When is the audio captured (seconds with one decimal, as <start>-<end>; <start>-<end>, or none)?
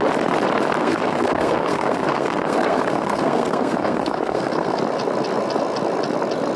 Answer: 0.0-0.8; 4.8-6.6